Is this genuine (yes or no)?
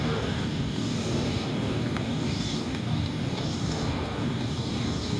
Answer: no